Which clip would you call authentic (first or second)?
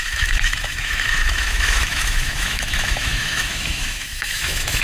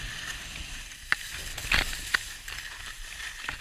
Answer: second